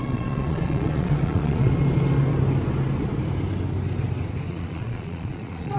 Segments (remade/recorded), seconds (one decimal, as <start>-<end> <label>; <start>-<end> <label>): 0.0-1.7 remade; 1.7-4.5 recorded; 4.5-5.8 remade